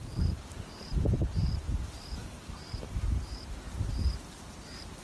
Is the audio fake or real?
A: fake